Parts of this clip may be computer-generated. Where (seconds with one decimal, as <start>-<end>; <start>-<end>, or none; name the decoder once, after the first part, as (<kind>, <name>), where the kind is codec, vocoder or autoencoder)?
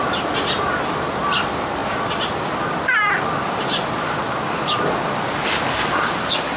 none